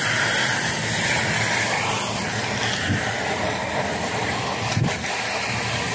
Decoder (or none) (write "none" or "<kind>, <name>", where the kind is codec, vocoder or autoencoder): none